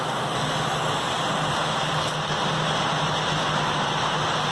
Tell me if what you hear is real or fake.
real